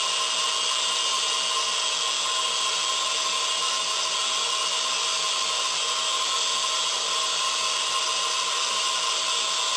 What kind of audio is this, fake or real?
real